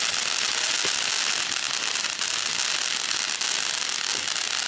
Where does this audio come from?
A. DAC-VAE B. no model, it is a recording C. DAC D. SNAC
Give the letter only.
B